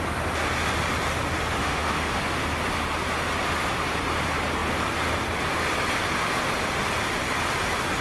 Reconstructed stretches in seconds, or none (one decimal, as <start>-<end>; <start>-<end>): 1.6-2.2